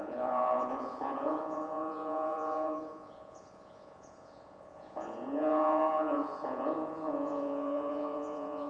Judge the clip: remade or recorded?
remade